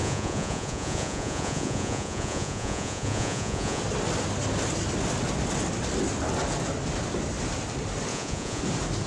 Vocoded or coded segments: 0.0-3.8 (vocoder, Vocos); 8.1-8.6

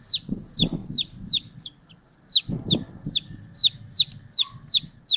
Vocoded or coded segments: none

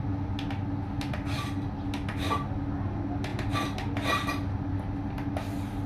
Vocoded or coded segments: none

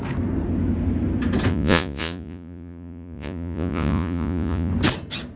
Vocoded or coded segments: 1.5-4.7 (vocoder, Vocos)

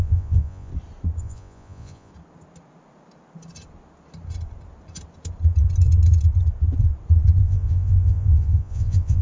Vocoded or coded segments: 0.0-0.7 (vocoder, Vocos); 1.2-2.1; 7.4-9.2

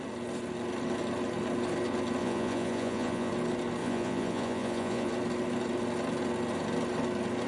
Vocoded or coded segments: 2.2-3.3 (vocoder, Vocos); 3.8-5.1

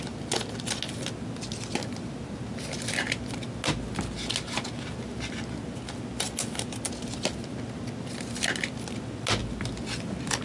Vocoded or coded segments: none